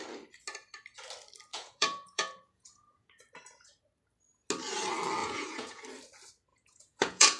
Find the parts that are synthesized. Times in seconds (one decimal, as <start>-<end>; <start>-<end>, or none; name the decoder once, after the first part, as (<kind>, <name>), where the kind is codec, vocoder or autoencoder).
1.5-3.1 (vocoder, Vocos); 5.2-5.8; 6.5-7.4